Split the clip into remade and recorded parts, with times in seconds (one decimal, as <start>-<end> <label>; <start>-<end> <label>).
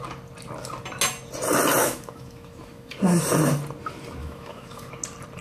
0.0-1.8 recorded; 1.8-3.0 remade; 3.0-4.2 recorded; 4.2-4.9 remade; 4.9-5.4 recorded